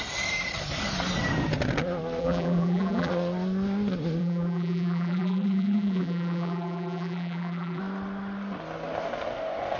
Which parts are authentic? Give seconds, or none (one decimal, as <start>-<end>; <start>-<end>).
0.0-2.2; 3.1-4.2; 7.8-9.8